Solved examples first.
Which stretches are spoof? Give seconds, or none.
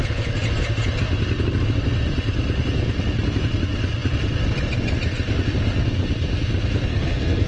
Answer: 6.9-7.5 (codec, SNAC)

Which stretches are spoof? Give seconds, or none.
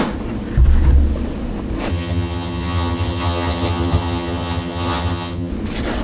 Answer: 1.9-5.5 (vocoder, HiFi-GAN)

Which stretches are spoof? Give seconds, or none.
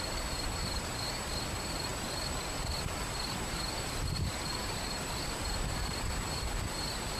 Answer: 0.0-7.2 (vocoder, BigVGAN v2)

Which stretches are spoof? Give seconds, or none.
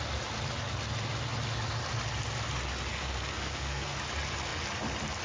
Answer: 2.9-4.0 (codec, SNAC)